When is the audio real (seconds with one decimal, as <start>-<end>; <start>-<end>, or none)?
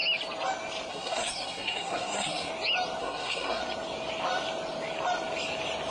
0.0-0.9; 2.5-3.0; 3.6-5.9